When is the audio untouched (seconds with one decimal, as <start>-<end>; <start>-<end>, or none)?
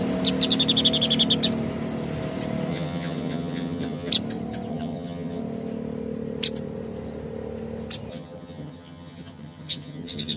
0.0-2.7; 4.1-4.7; 5.4-8.1